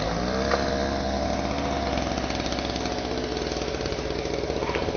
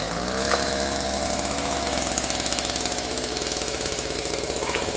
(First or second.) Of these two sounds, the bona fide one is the first